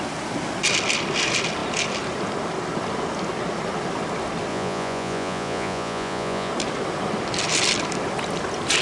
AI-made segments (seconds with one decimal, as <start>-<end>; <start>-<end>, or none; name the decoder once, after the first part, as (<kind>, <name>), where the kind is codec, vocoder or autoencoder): 4.5-6.5 (vocoder, Vocos)